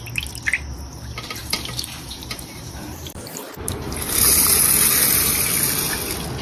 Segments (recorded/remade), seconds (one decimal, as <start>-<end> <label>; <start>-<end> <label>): 0.0-1.4 recorded; 1.4-4.6 remade; 4.6-6.4 recorded